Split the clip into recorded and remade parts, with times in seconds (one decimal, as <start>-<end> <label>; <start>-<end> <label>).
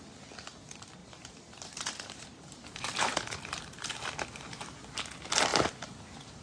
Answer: 0.0-1.0 recorded; 1.0-4.8 remade; 4.8-5.5 recorded; 5.5-6.4 remade